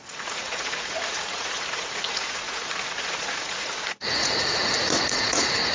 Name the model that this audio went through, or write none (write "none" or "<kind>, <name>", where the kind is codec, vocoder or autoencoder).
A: vocoder, Vocos